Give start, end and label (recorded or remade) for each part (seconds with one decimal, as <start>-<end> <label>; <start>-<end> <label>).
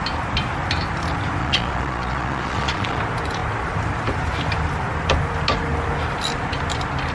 0.0-1.4 recorded; 1.4-3.0 remade; 3.0-7.1 recorded